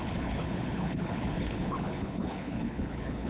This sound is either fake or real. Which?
fake